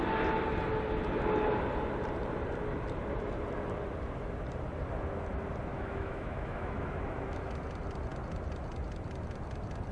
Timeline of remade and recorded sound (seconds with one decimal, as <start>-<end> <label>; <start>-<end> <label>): 0.0-5.7 recorded; 5.7-7.5 remade; 7.5-9.9 recorded